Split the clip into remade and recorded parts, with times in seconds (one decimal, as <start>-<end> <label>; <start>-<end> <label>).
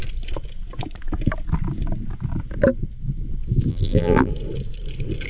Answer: 0.0-3.7 recorded; 3.7-4.3 remade; 4.3-5.3 recorded